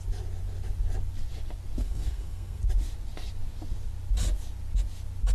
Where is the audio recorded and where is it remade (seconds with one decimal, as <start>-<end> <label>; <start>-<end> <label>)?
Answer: 0.0-1.8 recorded; 1.8-2.6 remade; 2.6-5.3 recorded